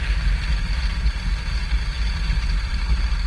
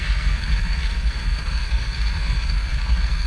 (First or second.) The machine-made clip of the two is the second